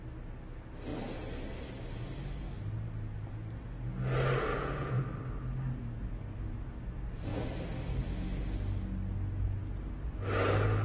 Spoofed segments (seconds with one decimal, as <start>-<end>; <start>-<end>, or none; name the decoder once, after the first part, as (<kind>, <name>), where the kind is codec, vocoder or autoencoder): 4.5-5.0 (vocoder, Vocos)